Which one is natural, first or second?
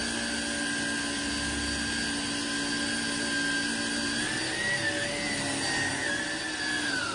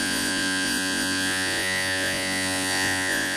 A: first